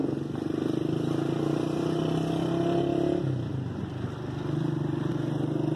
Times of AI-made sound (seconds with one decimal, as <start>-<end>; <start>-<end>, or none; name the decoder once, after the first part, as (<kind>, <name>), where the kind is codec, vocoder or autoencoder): none